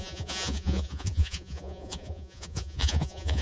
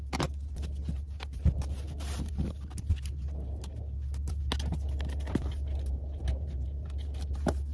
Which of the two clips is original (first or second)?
second